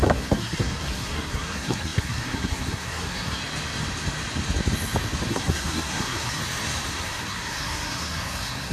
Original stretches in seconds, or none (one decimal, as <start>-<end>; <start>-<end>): 3.4-5.3; 6.4-6.9